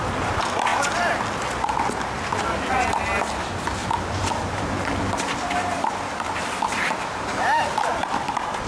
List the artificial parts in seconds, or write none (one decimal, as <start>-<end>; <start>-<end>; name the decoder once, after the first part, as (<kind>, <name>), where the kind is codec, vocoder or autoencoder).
3.8-7.8 (vocoder, BigVGAN v2)